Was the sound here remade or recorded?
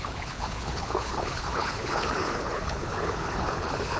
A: remade